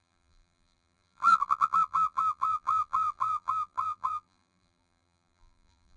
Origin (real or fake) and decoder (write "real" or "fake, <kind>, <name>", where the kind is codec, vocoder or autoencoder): fake, vocoder, BigVGAN v2